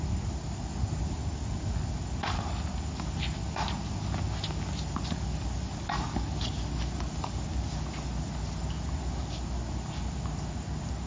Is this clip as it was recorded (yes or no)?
yes